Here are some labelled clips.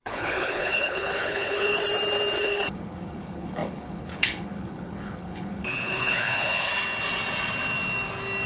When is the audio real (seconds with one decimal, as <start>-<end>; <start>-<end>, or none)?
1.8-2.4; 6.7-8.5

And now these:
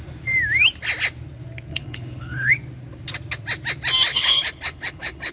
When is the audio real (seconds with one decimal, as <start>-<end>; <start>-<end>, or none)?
0.0-1.7; 2.5-4.1

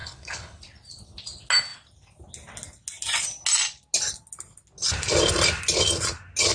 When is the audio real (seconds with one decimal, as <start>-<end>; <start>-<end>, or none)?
0.6-6.5

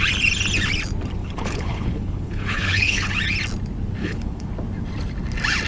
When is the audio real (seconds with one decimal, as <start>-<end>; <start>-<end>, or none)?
0.0-1.2; 3.1-4.0; 4.5-5.7

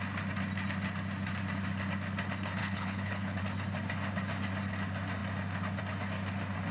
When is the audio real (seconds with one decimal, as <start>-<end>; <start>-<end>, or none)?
0.0-2.6; 3.4-6.7

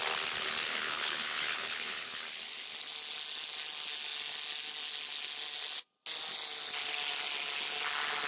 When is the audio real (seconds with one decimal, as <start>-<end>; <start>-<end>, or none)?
0.0-0.7; 2.2-8.3

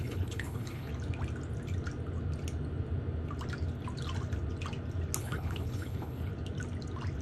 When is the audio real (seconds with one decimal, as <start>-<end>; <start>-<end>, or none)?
0.9-5.2; 6.3-7.2

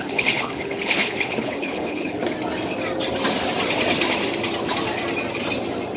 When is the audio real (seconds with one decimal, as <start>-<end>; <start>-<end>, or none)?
2.2-6.0